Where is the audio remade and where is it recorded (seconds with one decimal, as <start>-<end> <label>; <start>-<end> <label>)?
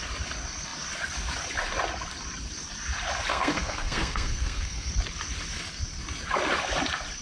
0.0-3.3 recorded; 3.3-4.9 remade; 4.9-7.2 recorded